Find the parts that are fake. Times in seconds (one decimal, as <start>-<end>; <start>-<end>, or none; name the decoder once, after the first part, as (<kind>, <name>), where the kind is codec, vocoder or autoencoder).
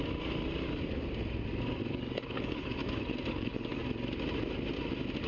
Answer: 1.9-2.8 (codec, DAC); 3.3-3.8